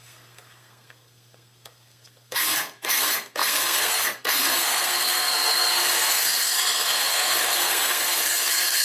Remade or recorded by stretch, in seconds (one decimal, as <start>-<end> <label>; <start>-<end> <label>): 0.0-8.8 remade